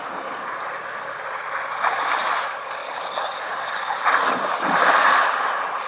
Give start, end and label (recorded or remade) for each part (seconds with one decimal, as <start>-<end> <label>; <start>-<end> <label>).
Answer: 0.0-2.8 recorded; 2.8-4.1 remade; 4.1-5.9 recorded